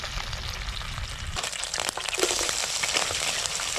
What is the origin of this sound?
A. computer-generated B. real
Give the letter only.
B